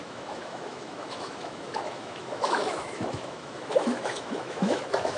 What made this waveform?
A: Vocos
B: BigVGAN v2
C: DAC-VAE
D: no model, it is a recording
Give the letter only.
C